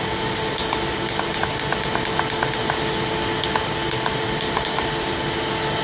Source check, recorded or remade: recorded